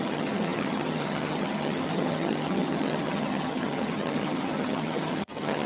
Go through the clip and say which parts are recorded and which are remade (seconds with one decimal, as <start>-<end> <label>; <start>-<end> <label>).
0.0-5.7 remade